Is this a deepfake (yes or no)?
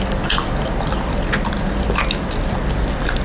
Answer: no